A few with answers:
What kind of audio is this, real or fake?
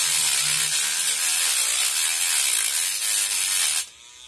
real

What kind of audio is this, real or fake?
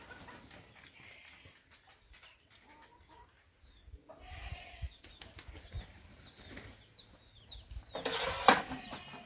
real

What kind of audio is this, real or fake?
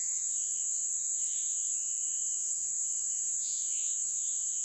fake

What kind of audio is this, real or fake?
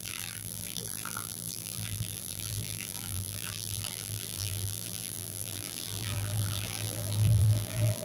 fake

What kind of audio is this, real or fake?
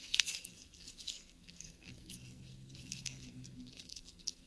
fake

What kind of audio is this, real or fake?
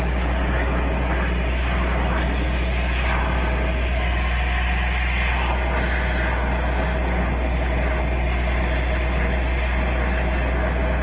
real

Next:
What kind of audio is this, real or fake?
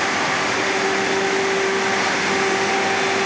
real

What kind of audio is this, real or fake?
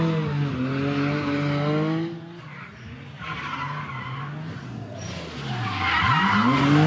real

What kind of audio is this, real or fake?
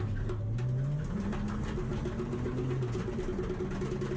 real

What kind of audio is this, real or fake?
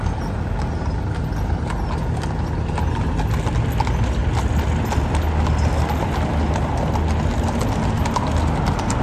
real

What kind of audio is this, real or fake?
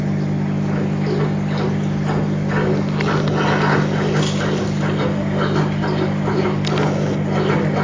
real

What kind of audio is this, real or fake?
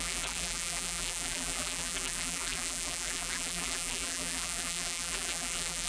fake